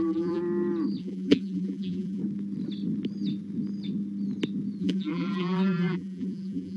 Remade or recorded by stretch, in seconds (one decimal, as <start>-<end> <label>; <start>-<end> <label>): 0.0-0.4 remade; 0.4-1.0 recorded; 1.0-2.2 remade; 2.2-4.8 recorded; 4.8-6.8 remade